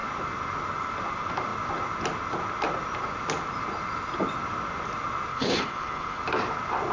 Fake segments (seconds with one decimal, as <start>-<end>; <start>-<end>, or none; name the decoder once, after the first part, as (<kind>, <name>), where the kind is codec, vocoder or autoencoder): 5.3-6.2 (codec, HILCodec)